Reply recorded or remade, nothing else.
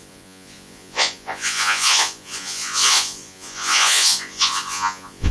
remade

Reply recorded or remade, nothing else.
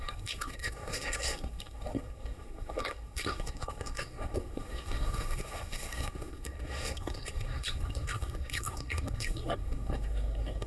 remade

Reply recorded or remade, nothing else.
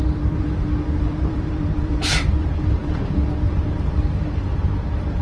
remade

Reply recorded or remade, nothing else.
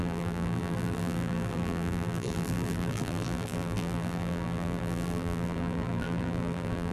remade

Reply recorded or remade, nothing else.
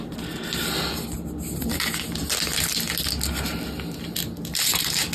recorded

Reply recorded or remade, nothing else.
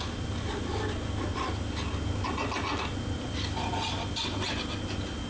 recorded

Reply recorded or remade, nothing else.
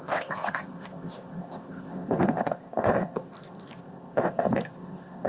remade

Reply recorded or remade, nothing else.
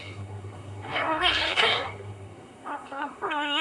remade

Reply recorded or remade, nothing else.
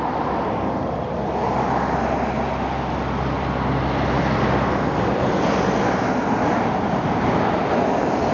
recorded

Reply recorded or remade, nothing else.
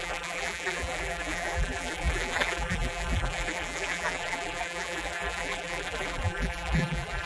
remade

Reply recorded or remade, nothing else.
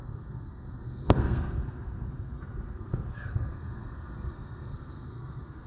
remade